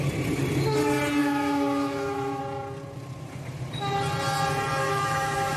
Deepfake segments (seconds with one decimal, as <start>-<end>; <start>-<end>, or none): 1.2-2.4; 4.8-5.6